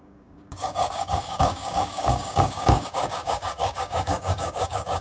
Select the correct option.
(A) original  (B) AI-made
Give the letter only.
B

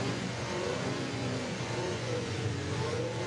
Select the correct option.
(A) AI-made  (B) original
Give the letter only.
A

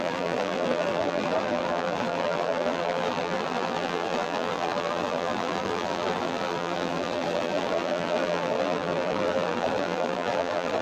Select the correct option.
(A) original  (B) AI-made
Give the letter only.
B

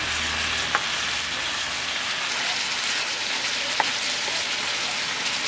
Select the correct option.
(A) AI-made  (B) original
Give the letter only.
B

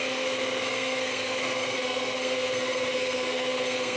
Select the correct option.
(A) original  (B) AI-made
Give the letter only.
B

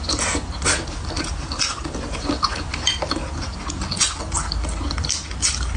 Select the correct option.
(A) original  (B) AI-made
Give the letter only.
A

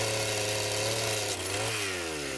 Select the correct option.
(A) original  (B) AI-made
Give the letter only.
A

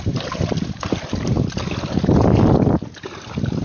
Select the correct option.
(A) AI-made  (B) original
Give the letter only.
B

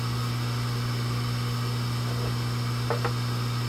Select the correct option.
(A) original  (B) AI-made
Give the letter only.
A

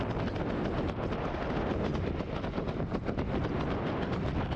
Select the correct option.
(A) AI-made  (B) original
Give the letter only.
B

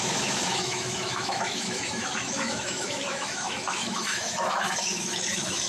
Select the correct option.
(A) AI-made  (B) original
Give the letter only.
A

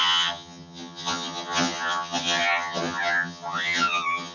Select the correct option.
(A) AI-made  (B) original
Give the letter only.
A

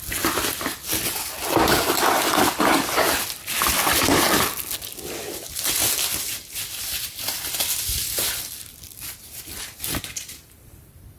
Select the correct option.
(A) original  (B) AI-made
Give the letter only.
A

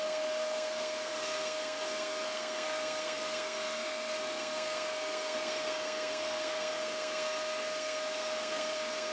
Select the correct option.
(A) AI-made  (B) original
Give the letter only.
A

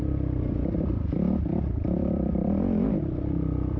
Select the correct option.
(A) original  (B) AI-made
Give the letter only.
B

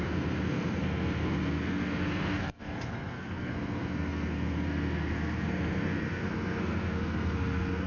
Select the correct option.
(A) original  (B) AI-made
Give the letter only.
B